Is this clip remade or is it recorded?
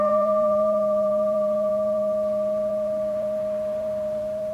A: remade